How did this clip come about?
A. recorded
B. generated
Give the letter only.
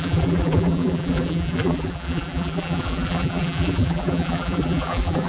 B